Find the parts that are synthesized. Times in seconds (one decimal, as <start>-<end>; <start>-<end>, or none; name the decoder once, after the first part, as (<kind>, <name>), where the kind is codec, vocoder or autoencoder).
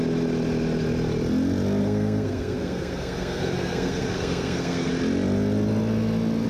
1.8-4.9 (codec, SNAC)